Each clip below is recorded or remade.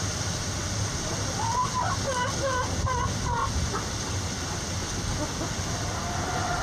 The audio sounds recorded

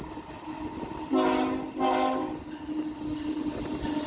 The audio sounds recorded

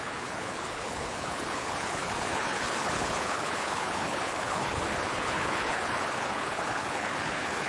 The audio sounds remade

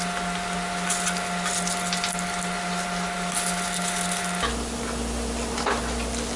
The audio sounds recorded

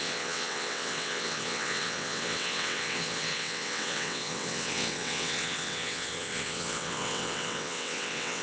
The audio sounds remade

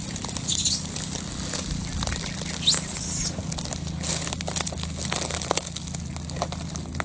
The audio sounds recorded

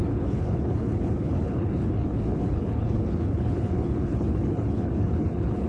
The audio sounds remade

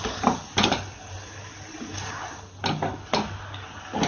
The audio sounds recorded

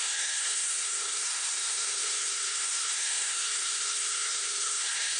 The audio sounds remade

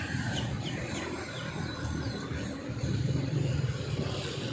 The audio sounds remade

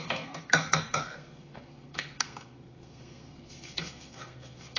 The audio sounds remade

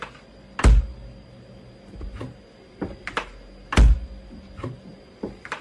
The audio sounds recorded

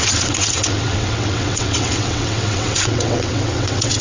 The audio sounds remade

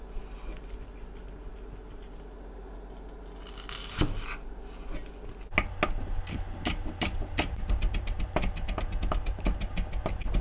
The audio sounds recorded